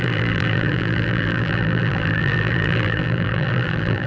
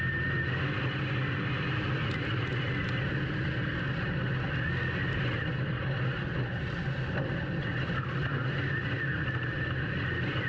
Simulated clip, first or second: first